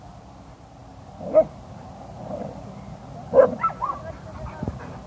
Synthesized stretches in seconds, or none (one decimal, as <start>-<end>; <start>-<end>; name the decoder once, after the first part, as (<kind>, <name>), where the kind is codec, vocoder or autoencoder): none